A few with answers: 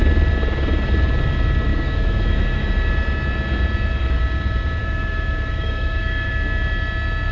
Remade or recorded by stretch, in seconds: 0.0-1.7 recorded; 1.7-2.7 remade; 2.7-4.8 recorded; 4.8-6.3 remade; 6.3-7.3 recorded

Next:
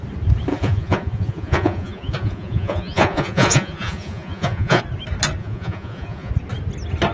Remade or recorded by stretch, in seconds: 0.0-0.5 recorded; 0.5-4.8 remade; 4.8-5.4 recorded; 5.4-6.3 remade; 6.3-7.1 recorded

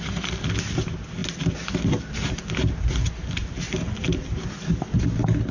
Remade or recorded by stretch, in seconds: 0.0-5.5 recorded

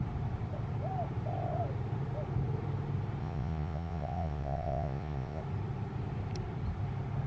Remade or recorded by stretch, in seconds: 0.0-3.2 recorded; 3.2-5.4 remade; 5.4-7.3 recorded